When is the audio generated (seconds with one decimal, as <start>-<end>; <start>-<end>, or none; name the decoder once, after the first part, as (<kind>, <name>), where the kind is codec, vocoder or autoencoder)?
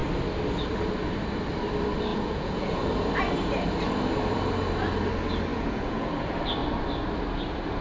2.1-2.8 (vocoder, Vocos); 5.5-6.1